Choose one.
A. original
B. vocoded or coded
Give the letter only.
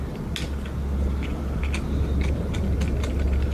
A